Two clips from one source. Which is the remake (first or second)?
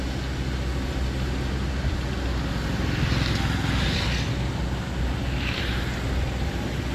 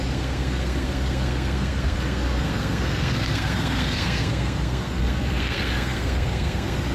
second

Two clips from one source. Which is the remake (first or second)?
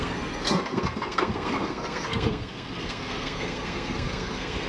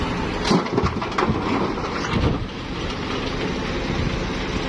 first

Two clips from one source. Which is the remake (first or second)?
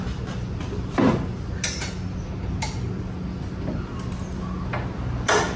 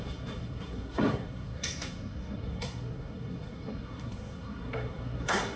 second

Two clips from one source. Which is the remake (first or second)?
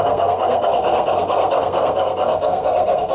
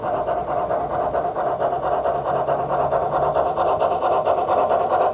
first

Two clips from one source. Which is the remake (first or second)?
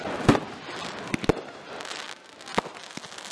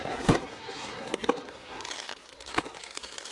second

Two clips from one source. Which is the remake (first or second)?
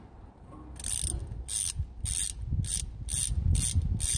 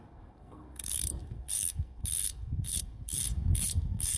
second